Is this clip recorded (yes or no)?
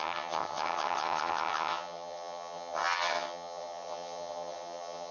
no